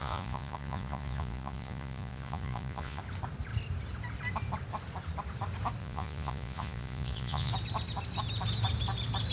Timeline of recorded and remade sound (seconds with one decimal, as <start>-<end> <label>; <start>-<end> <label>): 0.0-3.0 remade; 3.0-5.8 recorded; 5.8-7.5 remade; 7.5-9.3 recorded